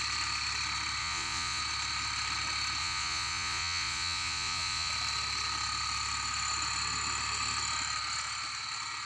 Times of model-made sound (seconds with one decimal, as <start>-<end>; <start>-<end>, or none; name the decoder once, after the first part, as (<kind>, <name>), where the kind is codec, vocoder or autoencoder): 1.0-1.6 (vocoder, Vocos); 2.8-4.9